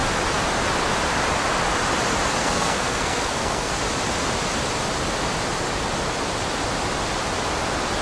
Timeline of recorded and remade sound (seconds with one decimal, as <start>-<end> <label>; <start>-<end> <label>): 0.0-2.4 recorded; 2.4-3.7 remade; 3.7-8.0 recorded